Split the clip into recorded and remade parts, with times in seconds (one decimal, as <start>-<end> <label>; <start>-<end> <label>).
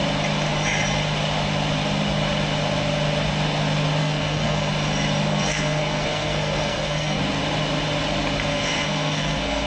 0.0-4.0 recorded; 4.0-4.7 remade; 4.7-5.3 recorded; 5.3-7.2 remade; 7.2-8.5 recorded; 8.5-9.7 remade